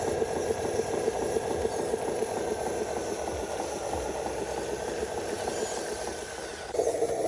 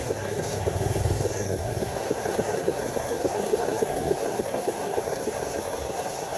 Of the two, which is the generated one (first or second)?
second